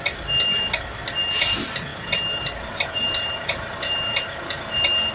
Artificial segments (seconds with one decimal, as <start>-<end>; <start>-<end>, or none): none